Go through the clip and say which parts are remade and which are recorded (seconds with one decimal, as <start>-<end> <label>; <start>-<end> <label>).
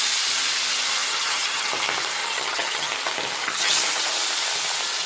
0.0-1.0 recorded; 1.0-1.7 remade; 1.7-2.2 recorded; 2.2-2.9 remade; 2.9-3.4 recorded; 3.4-4.1 remade; 4.1-5.1 recorded